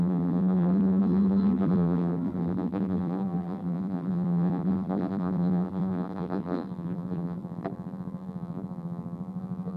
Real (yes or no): no